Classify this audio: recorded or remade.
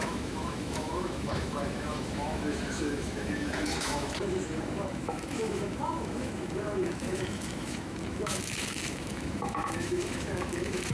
remade